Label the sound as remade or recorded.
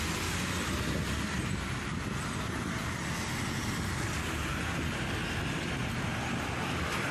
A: recorded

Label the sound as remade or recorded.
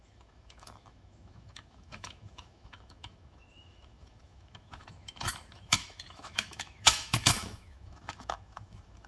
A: remade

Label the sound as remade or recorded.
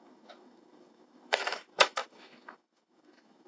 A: remade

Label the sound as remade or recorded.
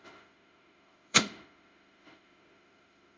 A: remade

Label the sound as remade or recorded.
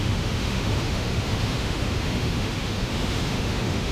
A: remade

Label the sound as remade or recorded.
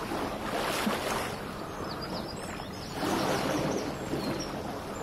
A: recorded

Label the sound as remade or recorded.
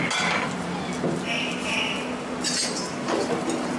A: recorded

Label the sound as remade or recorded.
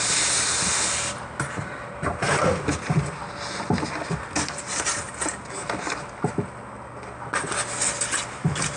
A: recorded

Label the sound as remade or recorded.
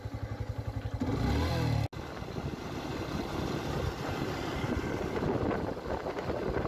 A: recorded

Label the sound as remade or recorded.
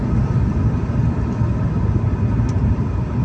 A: recorded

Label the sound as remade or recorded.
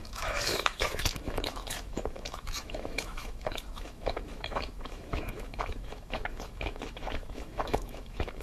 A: remade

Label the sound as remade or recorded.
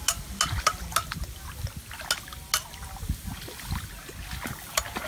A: recorded